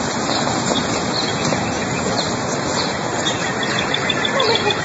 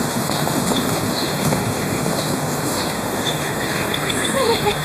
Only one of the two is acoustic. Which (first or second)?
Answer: first